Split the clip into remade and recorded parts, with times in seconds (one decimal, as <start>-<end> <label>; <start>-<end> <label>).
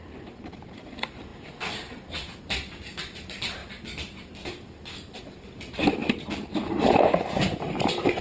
0.0-8.2 recorded